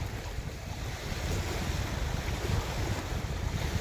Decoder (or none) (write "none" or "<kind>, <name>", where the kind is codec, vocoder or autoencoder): none